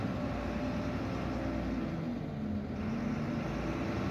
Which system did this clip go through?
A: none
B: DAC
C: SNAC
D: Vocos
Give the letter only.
A